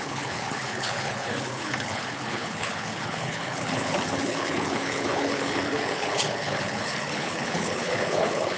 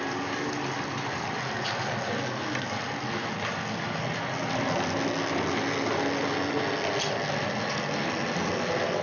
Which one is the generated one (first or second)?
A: first